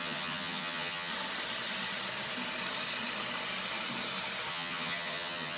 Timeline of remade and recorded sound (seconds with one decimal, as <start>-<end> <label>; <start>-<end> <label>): 0.0-1.1 remade; 1.1-4.5 recorded; 4.5-5.6 remade